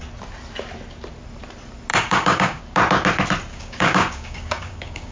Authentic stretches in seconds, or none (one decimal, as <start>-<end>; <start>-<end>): 0.0-1.9; 2.6-3.5